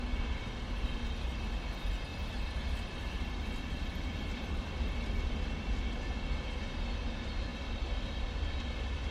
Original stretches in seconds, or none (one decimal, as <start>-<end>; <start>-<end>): 0.0-2.1; 5.6-7.5; 8.3-9.1